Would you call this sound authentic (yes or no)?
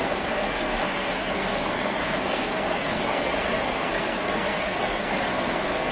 no